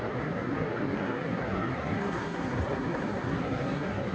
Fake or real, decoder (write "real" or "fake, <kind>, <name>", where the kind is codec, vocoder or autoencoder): fake, codec, SNAC